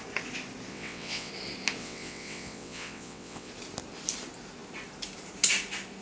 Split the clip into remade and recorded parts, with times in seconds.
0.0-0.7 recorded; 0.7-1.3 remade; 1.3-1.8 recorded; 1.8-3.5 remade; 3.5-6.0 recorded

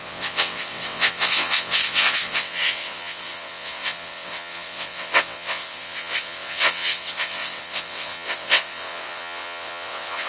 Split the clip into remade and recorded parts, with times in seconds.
0.0-10.3 remade

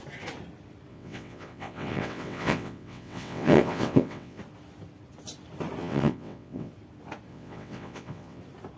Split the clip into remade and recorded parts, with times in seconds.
0.0-0.9 recorded; 0.9-4.4 remade; 4.4-5.8 recorded; 5.8-6.7 remade; 6.7-7.3 recorded; 7.3-8.4 remade; 8.4-8.8 recorded

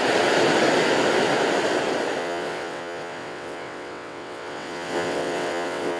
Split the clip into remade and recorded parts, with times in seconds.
0.0-2.2 recorded; 2.2-6.0 remade

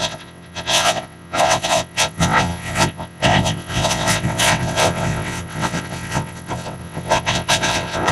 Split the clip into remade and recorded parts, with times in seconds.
0.0-8.1 remade

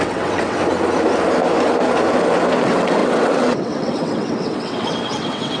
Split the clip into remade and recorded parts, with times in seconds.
0.0-0.6 remade; 0.6-2.6 recorded; 2.6-5.6 remade